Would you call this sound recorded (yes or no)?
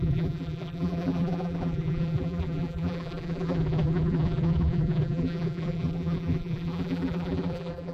no